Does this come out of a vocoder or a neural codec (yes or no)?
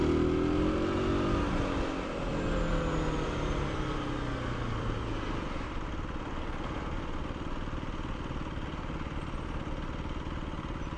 no